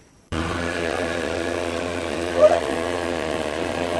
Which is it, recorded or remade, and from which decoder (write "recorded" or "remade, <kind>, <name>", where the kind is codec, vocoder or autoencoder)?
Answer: remade, vocoder, Vocos